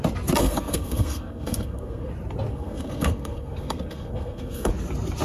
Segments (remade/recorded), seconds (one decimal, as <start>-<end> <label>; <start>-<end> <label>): 0.0-0.4 recorded; 0.4-2.1 remade; 2.1-2.5 recorded; 2.5-4.7 remade; 4.7-5.2 recorded